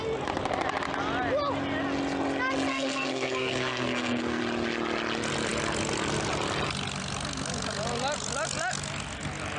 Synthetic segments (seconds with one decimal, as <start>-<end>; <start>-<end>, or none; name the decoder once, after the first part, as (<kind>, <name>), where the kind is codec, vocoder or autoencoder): 2.7-4.4 (codec, SNAC)